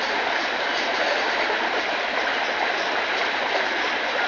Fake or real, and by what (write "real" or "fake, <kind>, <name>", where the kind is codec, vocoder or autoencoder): real